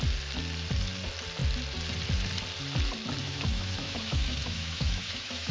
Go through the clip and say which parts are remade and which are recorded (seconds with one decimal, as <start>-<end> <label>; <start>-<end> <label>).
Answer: 0.0-3.2 recorded; 3.2-5.5 remade